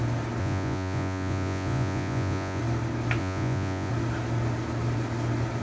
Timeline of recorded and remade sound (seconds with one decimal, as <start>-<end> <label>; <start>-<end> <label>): 0.0-0.4 recorded; 0.4-2.6 remade; 2.6-3.2 recorded; 3.2-3.9 remade; 3.9-5.6 recorded